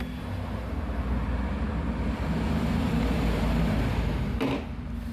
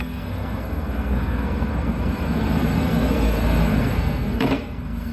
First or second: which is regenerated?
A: second